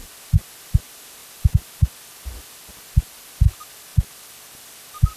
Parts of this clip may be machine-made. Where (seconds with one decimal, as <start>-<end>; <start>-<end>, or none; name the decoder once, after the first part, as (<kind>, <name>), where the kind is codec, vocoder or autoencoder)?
none